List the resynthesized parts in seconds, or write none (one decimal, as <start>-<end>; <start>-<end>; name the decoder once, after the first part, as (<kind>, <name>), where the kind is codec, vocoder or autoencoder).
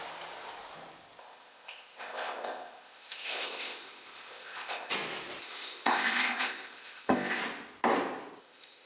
1.2-4.9 (codec, ZipCodec); 5.4-7.4; 8.4-8.9